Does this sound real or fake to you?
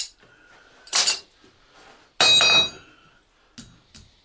real